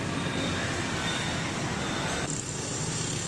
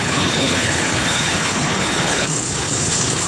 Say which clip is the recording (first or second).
first